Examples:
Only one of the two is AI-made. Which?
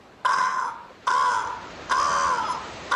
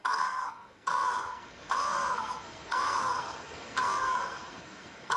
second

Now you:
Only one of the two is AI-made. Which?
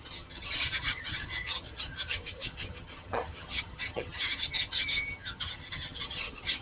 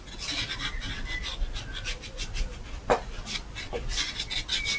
first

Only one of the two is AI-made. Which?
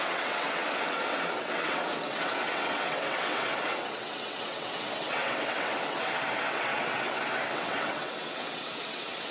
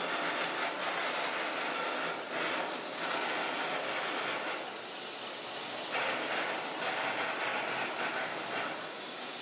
first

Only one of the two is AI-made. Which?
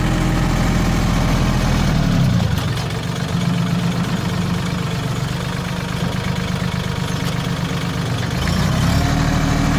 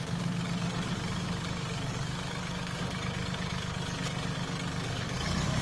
second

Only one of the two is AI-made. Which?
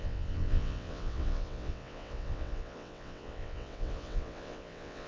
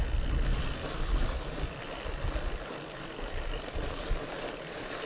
first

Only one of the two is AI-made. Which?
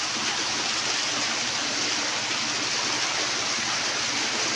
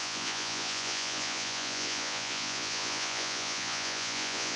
second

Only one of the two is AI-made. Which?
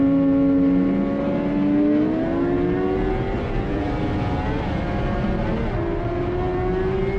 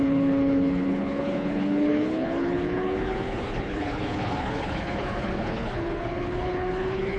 second